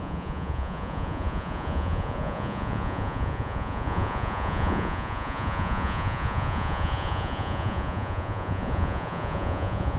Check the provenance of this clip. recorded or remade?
remade